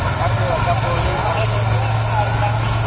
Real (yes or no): yes